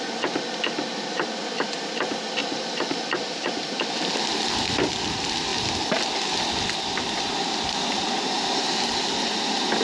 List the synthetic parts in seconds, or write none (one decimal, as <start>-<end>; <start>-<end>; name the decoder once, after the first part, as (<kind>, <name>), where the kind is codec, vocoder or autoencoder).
none